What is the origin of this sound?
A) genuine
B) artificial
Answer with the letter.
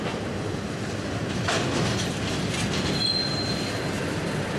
A